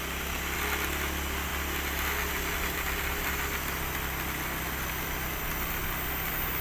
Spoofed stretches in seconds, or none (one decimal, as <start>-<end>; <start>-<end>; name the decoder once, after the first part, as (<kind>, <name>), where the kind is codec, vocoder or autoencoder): none